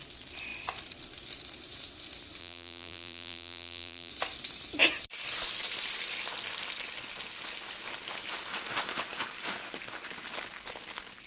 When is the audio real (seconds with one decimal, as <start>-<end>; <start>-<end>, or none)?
0.0-2.4; 4.1-11.3